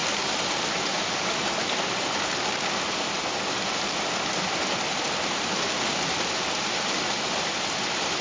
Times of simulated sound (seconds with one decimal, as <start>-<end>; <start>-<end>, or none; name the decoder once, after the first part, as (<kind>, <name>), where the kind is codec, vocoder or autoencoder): none